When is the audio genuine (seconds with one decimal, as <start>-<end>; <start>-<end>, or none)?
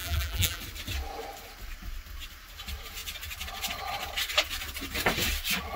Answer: 0.6-5.8